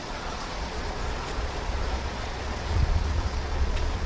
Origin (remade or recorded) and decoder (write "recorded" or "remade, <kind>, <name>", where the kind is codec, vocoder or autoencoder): remade, vocoder, Vocos